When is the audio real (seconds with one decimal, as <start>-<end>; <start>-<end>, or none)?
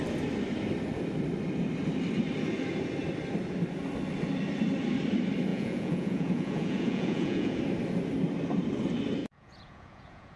0.0-5.5; 7.6-9.2